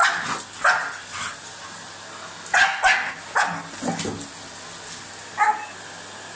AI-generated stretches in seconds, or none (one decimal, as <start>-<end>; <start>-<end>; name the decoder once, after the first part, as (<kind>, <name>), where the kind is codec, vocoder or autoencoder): none